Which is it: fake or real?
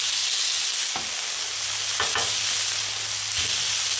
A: real